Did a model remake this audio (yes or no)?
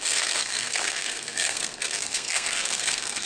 yes